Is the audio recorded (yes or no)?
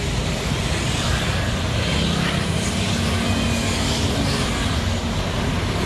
yes